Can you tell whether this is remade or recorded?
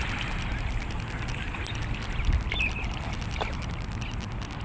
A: recorded